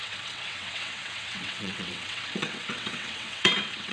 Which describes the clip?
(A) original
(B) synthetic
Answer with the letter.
B